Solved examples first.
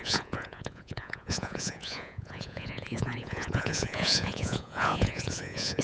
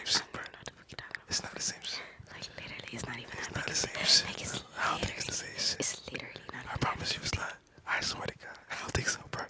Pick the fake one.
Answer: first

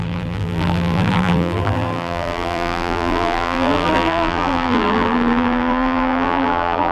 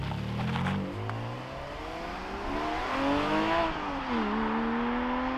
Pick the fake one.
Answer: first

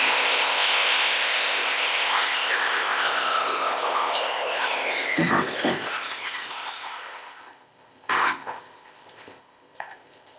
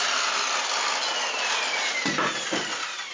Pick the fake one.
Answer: first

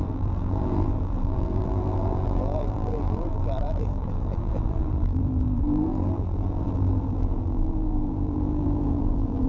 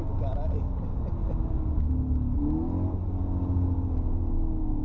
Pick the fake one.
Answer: first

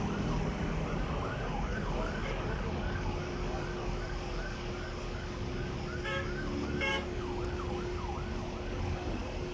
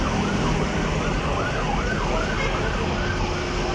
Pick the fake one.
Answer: first